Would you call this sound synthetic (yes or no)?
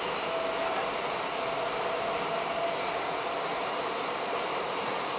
no